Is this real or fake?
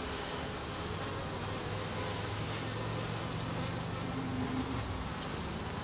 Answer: real